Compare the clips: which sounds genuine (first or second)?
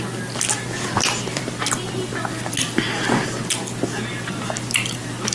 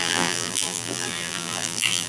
first